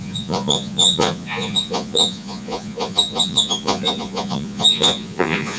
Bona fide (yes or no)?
no